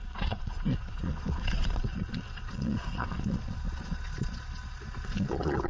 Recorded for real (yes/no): no